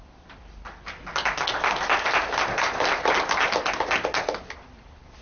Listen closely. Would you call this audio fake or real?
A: real